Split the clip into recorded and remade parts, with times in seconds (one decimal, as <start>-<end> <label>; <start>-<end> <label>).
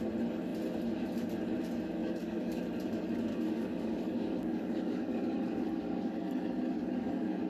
0.0-2.0 recorded; 2.0-2.6 remade; 2.6-3.3 recorded; 3.3-7.5 remade